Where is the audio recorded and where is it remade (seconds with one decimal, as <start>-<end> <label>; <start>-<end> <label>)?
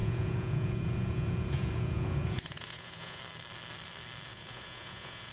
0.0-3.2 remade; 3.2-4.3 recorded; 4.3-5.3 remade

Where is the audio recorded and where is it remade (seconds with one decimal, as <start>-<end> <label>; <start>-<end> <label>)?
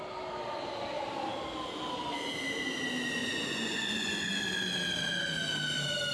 0.0-3.2 recorded; 3.2-4.4 remade; 4.4-6.1 recorded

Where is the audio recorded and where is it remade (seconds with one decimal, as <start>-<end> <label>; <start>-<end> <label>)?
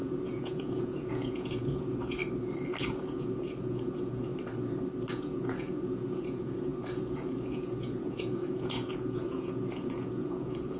0.0-2.2 remade; 2.2-2.8 recorded; 2.8-4.3 remade; 4.3-5.1 recorded; 5.1-10.8 remade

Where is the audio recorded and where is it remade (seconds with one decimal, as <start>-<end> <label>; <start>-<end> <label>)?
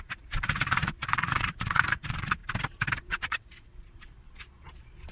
0.0-2.4 remade; 2.4-3.0 recorded; 3.0-5.1 remade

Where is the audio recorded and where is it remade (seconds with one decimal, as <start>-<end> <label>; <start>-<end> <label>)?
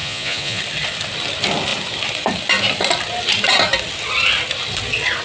0.0-0.6 remade; 0.6-5.2 recorded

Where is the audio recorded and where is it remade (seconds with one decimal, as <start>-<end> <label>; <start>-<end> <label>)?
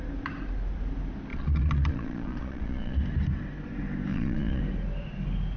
0.0-1.3 recorded; 1.3-3.0 remade; 3.0-4.1 recorded; 4.1-4.6 remade; 4.6-5.6 recorded